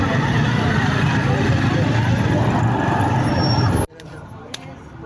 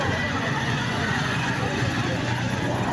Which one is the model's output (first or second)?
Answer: second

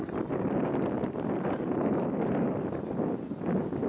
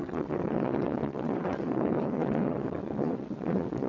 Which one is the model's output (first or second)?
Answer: second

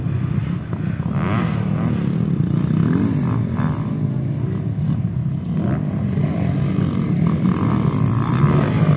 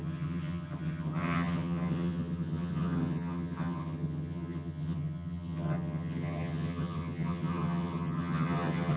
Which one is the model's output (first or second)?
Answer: second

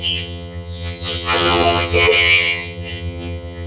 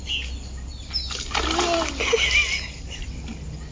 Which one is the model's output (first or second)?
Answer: first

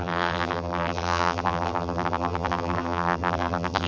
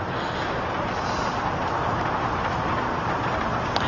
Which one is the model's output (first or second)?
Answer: first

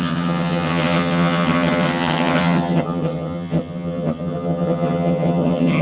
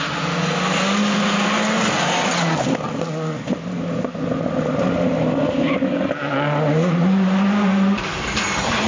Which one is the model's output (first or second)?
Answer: first